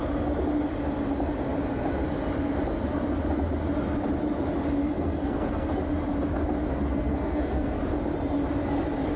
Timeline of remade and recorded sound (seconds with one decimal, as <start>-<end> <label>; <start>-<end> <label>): 0.0-4.8 recorded; 4.8-5.8 remade; 5.8-6.6 recorded; 6.6-7.8 remade; 7.8-9.2 recorded